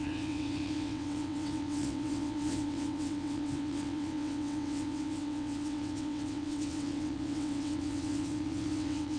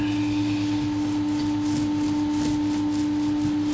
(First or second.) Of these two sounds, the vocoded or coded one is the first